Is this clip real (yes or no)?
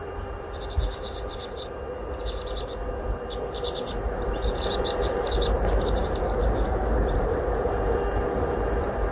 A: no